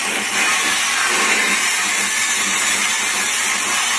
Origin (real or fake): real